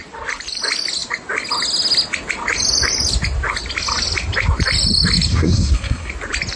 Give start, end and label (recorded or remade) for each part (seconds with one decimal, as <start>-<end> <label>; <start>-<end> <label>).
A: 0.0-5.3 recorded; 5.3-6.1 remade; 6.1-6.6 recorded